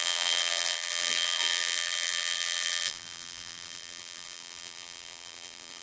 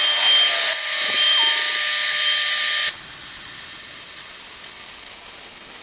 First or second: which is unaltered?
second